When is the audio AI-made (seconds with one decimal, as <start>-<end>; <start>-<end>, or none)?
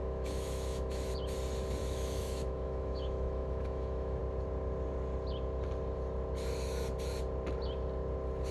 0.0-1.1; 1.8-4.2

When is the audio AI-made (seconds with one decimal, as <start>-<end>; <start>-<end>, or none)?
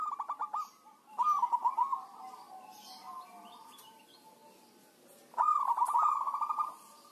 0.0-1.8; 2.9-4.4; 6.5-7.1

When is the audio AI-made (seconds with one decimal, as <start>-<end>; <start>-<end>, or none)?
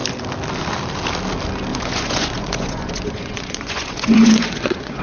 1.7-5.0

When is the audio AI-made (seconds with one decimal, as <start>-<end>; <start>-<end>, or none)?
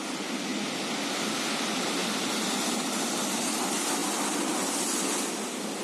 none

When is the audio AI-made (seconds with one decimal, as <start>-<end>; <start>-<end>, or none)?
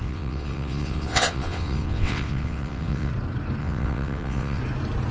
0.0-3.1; 3.6-4.6